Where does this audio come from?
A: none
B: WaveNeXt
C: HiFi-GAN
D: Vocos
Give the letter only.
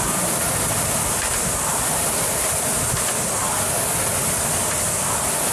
A